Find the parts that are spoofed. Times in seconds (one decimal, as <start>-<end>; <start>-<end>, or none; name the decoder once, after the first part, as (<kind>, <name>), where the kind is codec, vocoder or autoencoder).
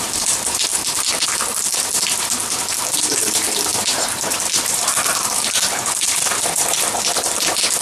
0.0-0.7 (vocoder, BigVGAN v2); 1.7-3.7; 4.2-7.8